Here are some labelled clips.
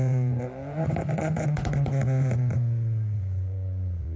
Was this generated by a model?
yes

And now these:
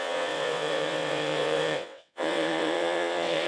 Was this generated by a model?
yes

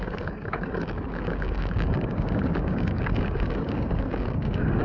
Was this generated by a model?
yes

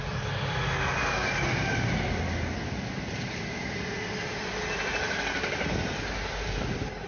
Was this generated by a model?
no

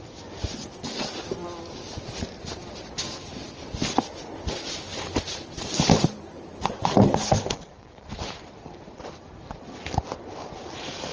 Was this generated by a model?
no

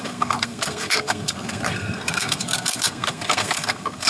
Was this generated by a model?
yes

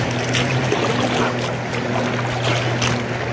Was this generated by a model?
no